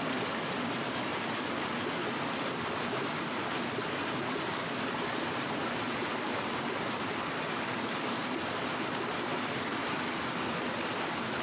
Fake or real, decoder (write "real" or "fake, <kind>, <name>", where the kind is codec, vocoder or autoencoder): real